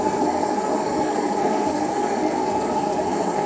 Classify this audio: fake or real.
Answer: fake